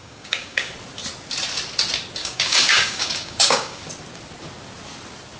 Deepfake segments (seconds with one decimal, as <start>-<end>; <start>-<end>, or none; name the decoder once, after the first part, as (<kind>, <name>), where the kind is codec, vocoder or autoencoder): 0.0-0.7 (codec, DAC); 2.2-3.8